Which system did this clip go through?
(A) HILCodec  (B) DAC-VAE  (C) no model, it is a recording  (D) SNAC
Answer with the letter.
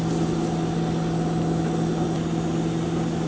C